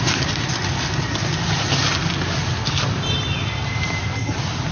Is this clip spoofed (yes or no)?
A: no